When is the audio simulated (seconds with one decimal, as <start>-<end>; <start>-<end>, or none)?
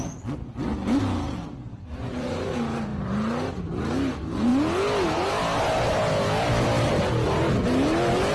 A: 1.9-2.5